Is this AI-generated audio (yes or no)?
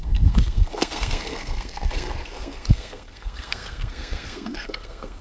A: yes